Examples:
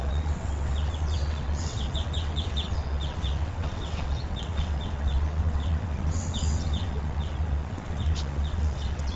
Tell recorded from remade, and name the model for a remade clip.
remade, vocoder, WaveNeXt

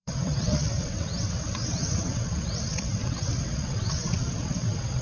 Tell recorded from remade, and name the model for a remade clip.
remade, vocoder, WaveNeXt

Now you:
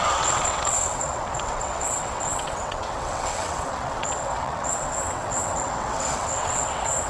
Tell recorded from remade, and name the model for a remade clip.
remade, vocoder, WaveNeXt